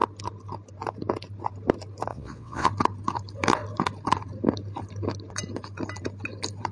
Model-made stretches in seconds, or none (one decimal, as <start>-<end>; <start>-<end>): 2.1-2.7